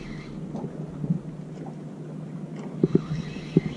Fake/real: real